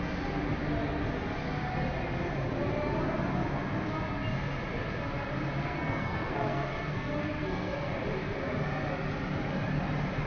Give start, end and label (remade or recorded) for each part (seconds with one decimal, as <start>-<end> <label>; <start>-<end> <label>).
0.0-5.6 recorded; 5.6-7.9 remade; 7.9-10.3 recorded